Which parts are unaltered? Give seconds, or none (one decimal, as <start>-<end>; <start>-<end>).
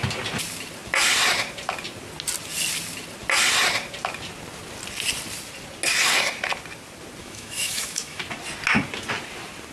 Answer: 0.0-7.2; 8.2-9.7